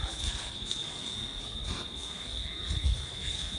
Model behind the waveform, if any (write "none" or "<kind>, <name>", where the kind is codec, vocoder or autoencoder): codec, SNAC